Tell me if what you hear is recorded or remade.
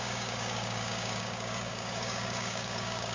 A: remade